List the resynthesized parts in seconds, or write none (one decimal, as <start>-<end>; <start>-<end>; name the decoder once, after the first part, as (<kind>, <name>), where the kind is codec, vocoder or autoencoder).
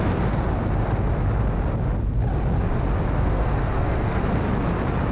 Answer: 3.2-4.2 (codec, SNAC)